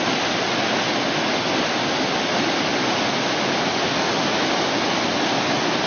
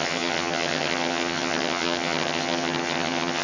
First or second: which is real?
first